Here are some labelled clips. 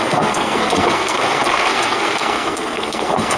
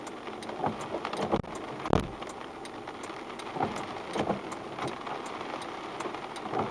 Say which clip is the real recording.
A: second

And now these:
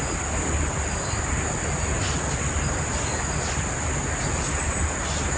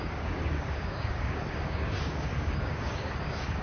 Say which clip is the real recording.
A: first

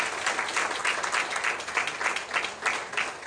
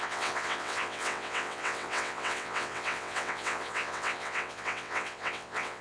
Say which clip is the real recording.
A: first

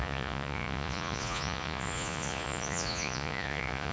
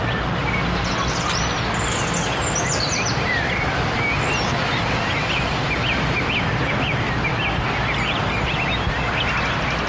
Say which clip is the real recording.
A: second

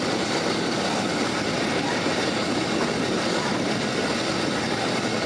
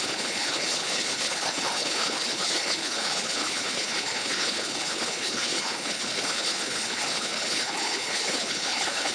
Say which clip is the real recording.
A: first